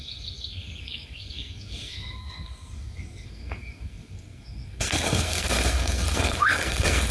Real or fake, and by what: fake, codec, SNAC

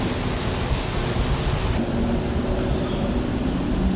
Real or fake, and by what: real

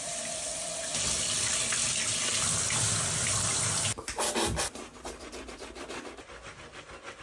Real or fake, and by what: real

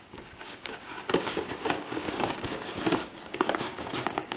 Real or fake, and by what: fake, codec, DAC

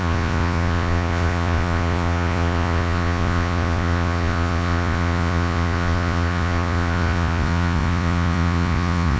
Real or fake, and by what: fake, vocoder, Vocos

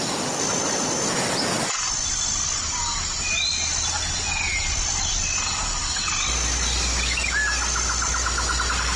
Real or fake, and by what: real